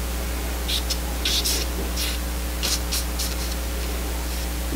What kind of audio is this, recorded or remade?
recorded